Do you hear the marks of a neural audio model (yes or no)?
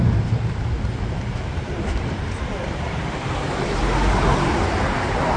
yes